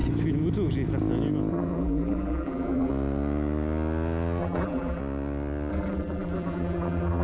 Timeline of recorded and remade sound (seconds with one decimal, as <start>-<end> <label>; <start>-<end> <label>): 0.0-1.5 recorded; 1.5-2.9 remade; 2.9-4.4 recorded; 4.4-5.0 remade; 5.0-5.7 recorded; 5.7-7.2 remade

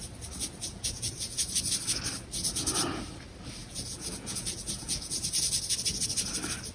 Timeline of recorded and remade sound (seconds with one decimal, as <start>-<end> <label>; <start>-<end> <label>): 0.0-0.4 recorded; 0.4-1.4 remade; 1.4-3.6 recorded; 3.6-5.2 remade; 5.2-6.7 recorded

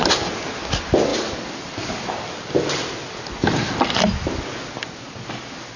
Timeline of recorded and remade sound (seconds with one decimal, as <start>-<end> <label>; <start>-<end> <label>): 0.0-5.8 recorded

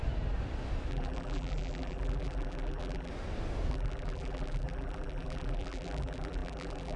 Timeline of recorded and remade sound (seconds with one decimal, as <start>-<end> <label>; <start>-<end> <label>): 0.0-0.9 recorded; 0.9-3.1 remade; 3.1-3.7 recorded; 3.7-7.0 remade

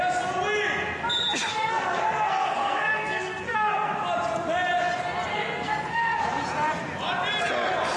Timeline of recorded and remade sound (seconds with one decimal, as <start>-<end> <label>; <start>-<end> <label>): 0.0-1.5 recorded; 1.5-4.0 remade; 4.0-5.3 recorded; 5.3-6.2 remade; 6.2-8.0 recorded

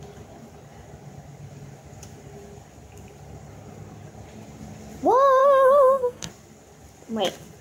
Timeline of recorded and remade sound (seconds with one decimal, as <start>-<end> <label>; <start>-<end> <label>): 0.0-5.4 recorded; 5.4-6.3 remade; 6.3-7.6 recorded